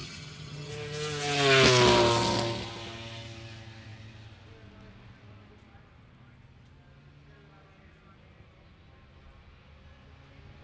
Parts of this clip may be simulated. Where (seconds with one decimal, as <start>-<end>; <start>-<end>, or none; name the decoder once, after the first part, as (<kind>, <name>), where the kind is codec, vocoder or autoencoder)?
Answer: 0.0-0.7 (vocoder, HiFi-GAN)